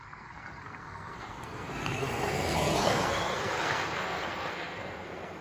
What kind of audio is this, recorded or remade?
remade